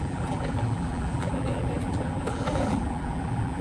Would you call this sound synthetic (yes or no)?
yes